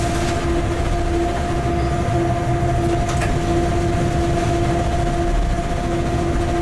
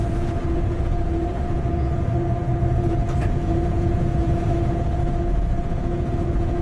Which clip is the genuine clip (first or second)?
first